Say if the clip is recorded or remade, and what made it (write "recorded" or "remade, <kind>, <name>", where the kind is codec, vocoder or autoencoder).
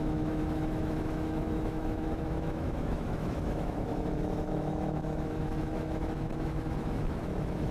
remade, autoencoder, DAC-VAE